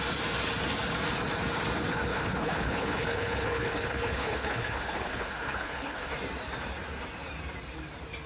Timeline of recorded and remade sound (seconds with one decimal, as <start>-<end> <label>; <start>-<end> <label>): 0.0-1.9 recorded; 1.9-6.1 remade; 6.1-8.3 recorded